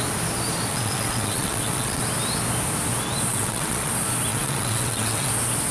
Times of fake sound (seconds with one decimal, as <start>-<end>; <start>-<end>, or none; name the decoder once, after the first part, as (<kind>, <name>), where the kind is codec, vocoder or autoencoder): 0.7-2.0 (vocoder, WaveNeXt); 3.3-3.9; 4.3-5.3

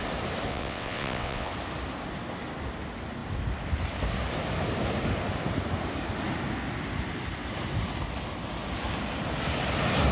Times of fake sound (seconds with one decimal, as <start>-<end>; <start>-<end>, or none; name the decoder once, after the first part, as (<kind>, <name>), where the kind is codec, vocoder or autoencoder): 0.5-1.5 (vocoder, WaveNeXt)

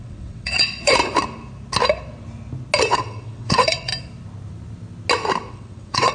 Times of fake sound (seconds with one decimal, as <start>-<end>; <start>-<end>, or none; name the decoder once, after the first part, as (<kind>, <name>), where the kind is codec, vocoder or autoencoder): 0.0-1.0 (vocoder, WaveNeXt); 2.9-3.9; 5.5-6.1

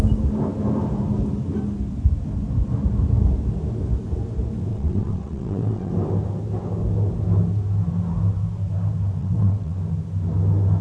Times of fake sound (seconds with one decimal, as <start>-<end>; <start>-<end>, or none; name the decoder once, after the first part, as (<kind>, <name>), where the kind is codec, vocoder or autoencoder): 4.7-5.9 (vocoder, WaveNeXt); 9.2-9.8

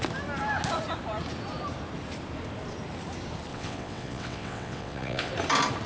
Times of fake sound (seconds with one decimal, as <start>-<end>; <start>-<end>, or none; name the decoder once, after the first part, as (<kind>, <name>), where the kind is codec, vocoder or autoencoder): 3.5-5.3 (vocoder, WaveNeXt)